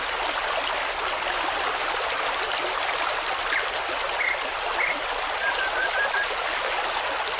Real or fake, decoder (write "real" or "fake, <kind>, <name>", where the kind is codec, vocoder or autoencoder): real